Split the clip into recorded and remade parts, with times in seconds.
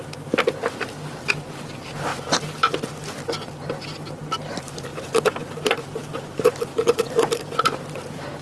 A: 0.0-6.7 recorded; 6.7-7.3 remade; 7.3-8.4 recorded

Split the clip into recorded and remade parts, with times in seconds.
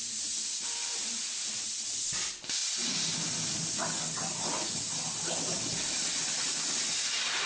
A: 0.0-7.5 recorded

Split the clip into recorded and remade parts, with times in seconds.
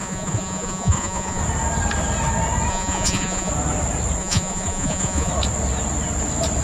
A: 0.0-1.4 remade; 1.4-2.7 recorded; 2.7-3.5 remade; 3.5-4.2 recorded; 4.2-5.3 remade; 5.3-6.6 recorded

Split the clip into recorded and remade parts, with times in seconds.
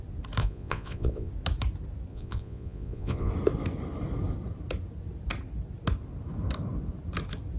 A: 0.0-0.4 recorded; 0.4-1.3 remade; 1.3-2.1 recorded; 2.1-3.3 remade; 3.3-7.6 recorded